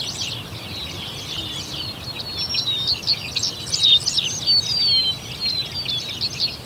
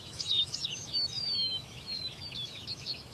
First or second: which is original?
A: first